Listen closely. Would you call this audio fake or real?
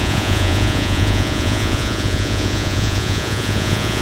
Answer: fake